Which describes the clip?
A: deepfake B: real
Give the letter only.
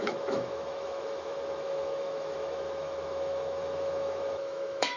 A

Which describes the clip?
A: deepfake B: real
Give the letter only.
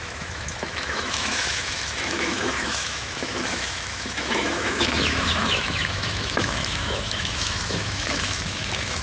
A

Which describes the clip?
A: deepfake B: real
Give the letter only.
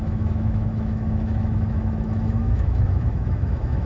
A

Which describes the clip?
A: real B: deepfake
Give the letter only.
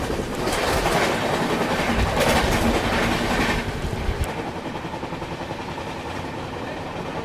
A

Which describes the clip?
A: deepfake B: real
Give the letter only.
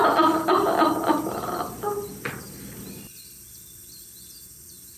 B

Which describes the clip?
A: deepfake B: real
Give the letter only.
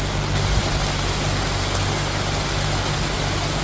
B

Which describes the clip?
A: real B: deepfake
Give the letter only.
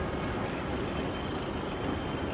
A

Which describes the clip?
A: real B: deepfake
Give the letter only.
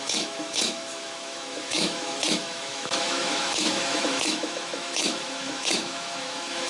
B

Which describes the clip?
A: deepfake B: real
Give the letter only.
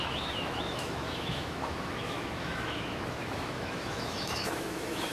A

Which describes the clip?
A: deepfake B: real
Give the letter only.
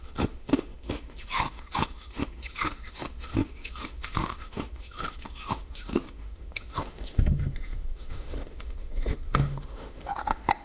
A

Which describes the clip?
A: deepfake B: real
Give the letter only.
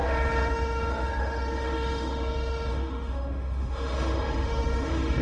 A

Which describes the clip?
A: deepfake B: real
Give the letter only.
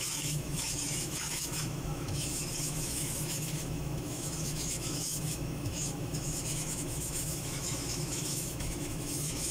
A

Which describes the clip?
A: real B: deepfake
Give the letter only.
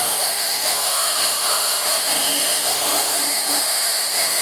B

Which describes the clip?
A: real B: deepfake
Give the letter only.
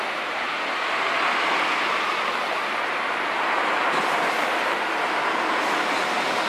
A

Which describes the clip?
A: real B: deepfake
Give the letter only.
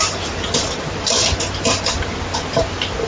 A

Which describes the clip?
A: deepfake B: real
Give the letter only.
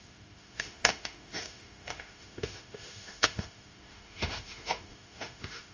A